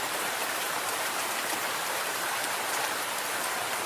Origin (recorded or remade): remade